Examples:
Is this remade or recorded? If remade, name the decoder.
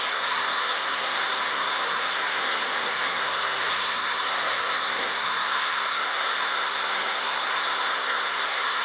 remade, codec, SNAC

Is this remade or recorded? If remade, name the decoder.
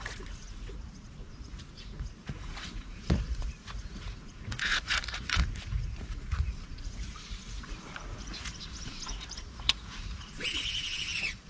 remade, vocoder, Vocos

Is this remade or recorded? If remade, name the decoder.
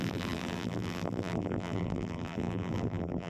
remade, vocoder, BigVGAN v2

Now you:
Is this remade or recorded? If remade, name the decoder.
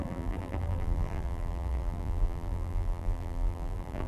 remade, vocoder, BigVGAN v2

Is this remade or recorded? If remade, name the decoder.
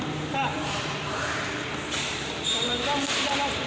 remade, vocoder, BigVGAN v2